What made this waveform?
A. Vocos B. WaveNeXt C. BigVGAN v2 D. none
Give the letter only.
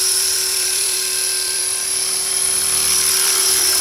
C